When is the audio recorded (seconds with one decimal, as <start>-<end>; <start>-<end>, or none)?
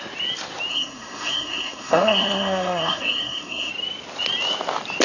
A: 0.0-0.7; 3.7-5.0